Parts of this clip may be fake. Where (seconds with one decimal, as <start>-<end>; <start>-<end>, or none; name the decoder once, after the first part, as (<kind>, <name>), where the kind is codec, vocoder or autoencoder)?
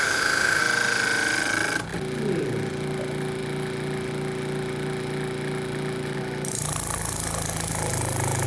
0.0-0.6 (autoencoder, DAC-VAE)